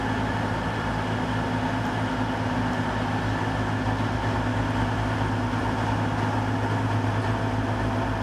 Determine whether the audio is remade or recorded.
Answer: recorded